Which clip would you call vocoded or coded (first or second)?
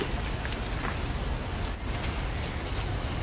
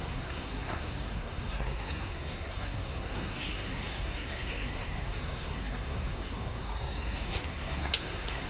second